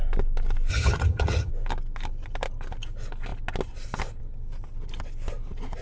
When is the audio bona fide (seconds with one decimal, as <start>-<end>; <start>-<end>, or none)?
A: 0.0-0.7; 1.5-5.8